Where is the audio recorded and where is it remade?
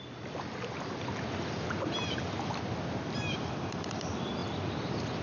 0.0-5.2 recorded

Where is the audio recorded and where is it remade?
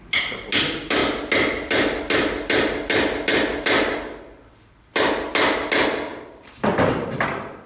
0.0-6.1 recorded; 6.1-7.2 remade; 7.2-7.7 recorded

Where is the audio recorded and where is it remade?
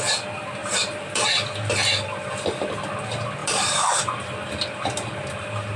0.0-0.6 recorded; 0.6-1.2 remade; 1.2-3.4 recorded; 3.4-4.0 remade; 4.0-5.8 recorded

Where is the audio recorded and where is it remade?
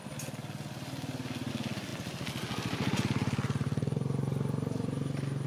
0.0-5.5 recorded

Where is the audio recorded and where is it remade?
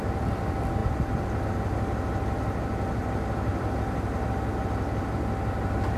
0.0-3.5 recorded; 3.5-4.3 remade; 4.3-6.0 recorded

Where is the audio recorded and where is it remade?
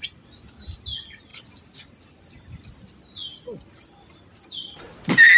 0.0-1.3 recorded; 1.3-3.0 remade; 3.0-5.4 recorded